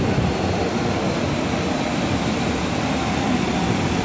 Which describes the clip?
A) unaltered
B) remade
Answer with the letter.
B